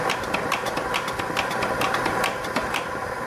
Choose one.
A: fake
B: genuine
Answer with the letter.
A